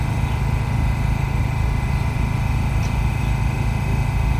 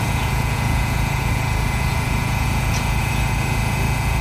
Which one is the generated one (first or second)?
second